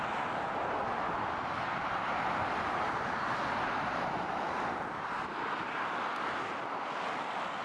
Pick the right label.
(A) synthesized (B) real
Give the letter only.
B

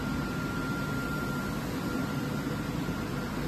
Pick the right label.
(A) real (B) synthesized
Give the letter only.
A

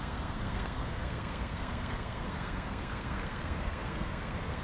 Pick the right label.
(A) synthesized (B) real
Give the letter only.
A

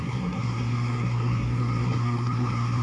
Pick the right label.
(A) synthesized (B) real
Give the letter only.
A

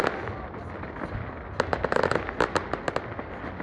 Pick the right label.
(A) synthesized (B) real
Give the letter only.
B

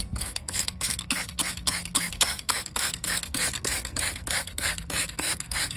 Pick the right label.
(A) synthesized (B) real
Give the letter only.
A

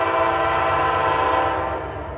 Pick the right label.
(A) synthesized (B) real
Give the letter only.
B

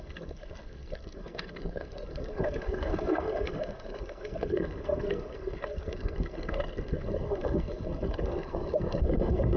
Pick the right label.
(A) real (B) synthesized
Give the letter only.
B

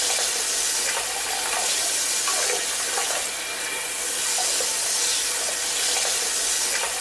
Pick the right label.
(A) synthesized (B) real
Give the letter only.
B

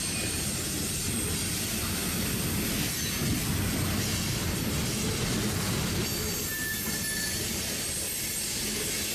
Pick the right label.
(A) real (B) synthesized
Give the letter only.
A